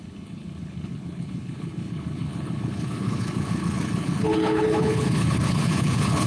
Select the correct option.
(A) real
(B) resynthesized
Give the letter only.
B